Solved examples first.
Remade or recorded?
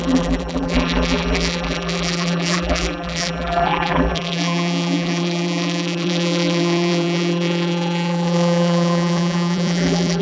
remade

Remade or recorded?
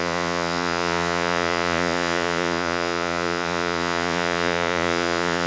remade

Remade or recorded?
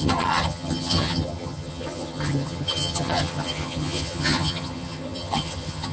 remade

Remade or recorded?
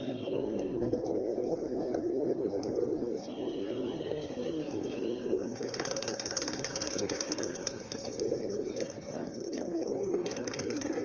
remade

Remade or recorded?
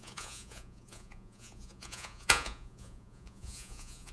remade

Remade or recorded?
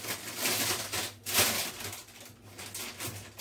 recorded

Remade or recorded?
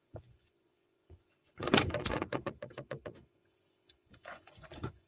remade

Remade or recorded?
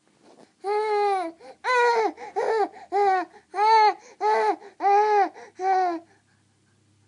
recorded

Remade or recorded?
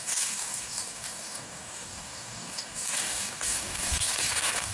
remade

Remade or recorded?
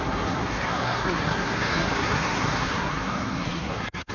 remade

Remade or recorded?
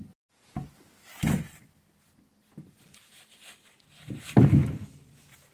recorded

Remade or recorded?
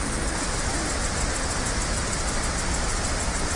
recorded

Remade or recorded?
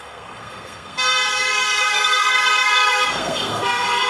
remade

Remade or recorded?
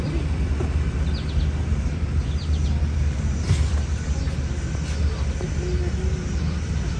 recorded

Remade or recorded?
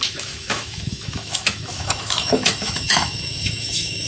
remade